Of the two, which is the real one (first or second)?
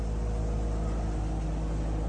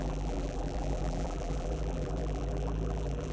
first